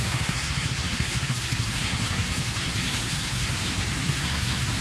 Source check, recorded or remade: remade